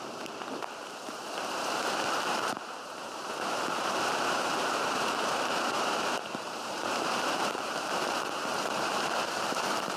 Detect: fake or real fake